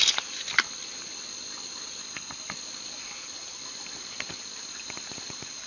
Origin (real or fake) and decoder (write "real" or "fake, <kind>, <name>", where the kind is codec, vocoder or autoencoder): real